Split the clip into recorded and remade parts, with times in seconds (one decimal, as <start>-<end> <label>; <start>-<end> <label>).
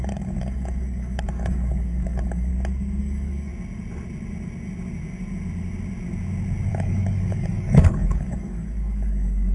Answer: 0.0-2.5 remade; 2.5-3.0 recorded; 3.0-3.5 remade; 3.5-6.7 recorded; 6.7-9.5 remade